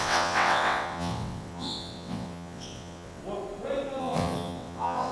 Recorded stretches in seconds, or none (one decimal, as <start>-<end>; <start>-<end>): 3.2-4.0

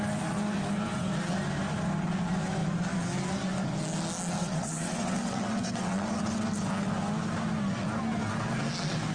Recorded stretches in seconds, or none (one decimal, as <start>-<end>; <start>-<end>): 0.0-4.4; 6.1-9.1

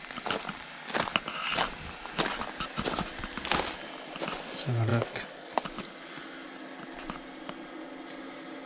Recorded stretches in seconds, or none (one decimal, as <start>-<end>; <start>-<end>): 0.0-8.7